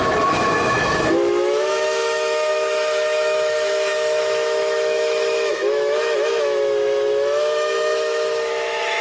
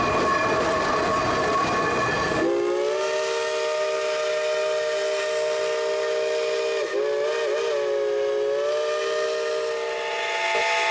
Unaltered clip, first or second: second